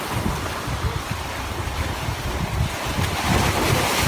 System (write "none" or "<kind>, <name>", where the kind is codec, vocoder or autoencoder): none